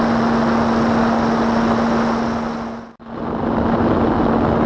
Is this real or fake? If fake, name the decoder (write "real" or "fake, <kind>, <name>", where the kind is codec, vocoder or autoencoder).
real